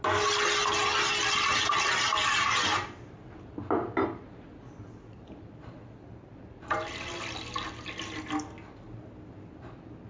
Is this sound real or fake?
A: real